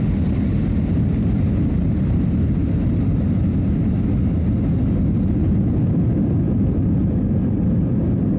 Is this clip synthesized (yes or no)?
no